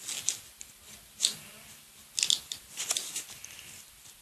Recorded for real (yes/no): yes